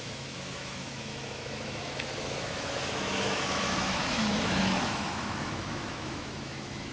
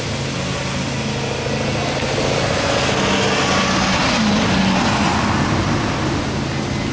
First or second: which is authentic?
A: second